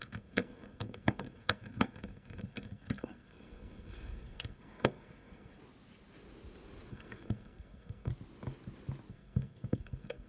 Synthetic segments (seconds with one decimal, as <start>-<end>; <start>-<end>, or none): 0.0-5.6; 6.9-8.1; 9.1-10.3